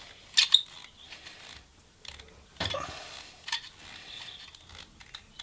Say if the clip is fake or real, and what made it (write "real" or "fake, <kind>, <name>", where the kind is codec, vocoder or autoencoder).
real